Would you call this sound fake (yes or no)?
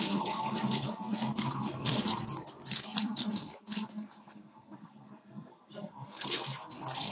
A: yes